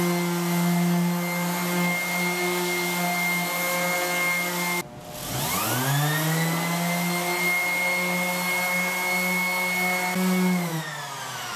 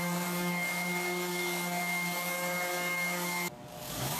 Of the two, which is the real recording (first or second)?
first